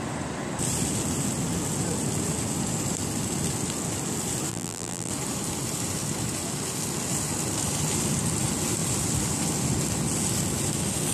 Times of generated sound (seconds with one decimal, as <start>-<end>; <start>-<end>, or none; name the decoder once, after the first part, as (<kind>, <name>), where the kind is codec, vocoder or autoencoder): 4.5-5.1 (vocoder, BigVGAN v2)